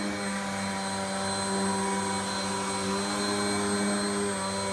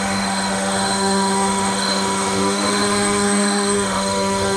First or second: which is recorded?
first